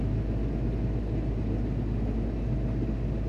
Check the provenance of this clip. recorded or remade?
recorded